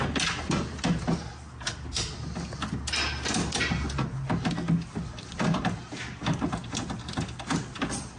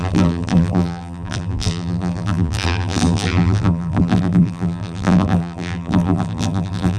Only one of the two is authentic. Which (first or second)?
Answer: first